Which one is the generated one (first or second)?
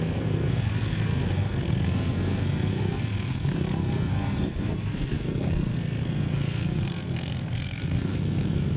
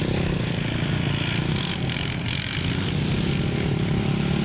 first